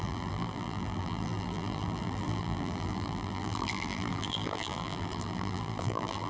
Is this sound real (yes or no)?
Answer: no